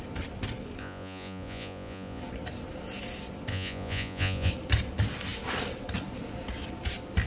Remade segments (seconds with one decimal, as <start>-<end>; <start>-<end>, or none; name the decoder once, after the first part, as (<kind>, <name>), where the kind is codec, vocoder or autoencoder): 0.8-2.2 (vocoder, Vocos); 3.5-4.5